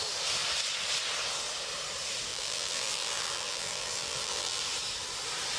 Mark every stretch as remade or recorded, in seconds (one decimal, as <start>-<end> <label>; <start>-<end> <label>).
0.0-2.3 recorded; 2.3-4.6 remade; 4.6-5.6 recorded